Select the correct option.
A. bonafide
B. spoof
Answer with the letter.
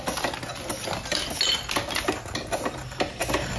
A